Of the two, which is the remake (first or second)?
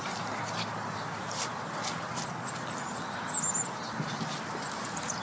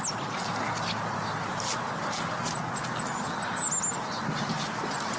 first